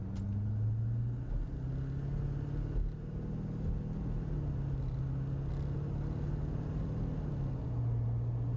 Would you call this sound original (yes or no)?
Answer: yes